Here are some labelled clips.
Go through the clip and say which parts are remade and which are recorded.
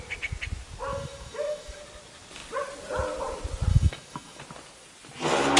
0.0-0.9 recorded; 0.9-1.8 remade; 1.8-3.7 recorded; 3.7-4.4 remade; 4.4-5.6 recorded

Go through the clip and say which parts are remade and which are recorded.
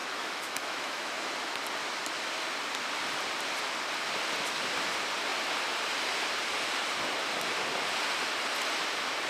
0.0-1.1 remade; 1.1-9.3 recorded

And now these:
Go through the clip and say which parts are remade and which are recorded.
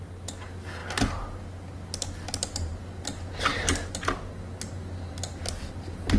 0.0-6.2 recorded